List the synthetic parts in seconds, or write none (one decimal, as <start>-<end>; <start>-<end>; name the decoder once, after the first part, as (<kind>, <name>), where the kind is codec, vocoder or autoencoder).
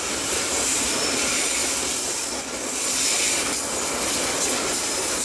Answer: 0.0-1.6 (vocoder, BigVGAN v2); 4.7-5.2